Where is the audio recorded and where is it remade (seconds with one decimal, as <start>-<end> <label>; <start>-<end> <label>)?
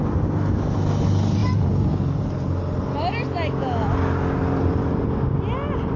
0.0-1.4 recorded; 1.4-2.0 remade; 2.0-6.0 recorded